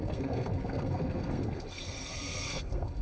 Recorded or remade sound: remade